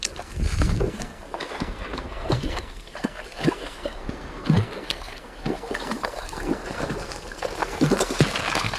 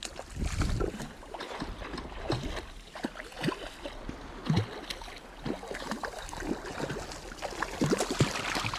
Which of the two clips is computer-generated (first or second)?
first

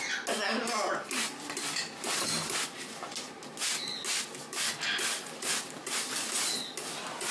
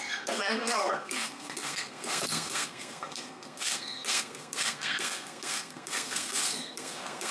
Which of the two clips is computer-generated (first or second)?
second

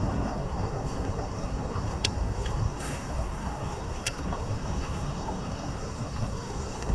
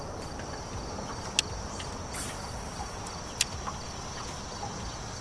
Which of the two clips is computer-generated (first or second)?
first